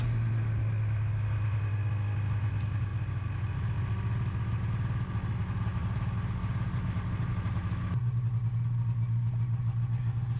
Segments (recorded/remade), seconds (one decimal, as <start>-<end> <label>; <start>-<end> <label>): 0.0-10.4 recorded